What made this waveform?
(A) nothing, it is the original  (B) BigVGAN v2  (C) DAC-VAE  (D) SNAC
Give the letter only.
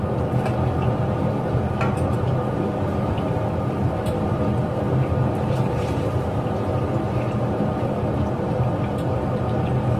B